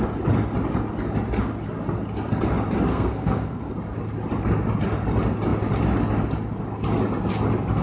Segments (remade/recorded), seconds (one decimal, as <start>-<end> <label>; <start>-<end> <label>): 0.0-2.9 recorded; 2.9-3.7 remade; 3.7-7.8 recorded